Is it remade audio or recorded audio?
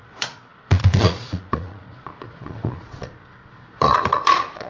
remade